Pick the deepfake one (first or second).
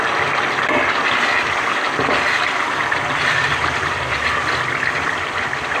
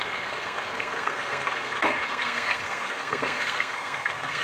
second